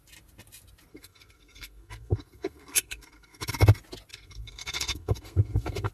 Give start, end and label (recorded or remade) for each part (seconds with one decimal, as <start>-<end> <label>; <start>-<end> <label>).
0.0-0.9 recorded; 0.9-3.5 remade; 3.5-4.1 recorded; 4.1-5.9 remade